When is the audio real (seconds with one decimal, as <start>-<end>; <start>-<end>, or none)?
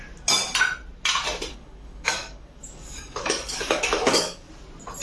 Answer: 0.0-1.5; 4.5-5.0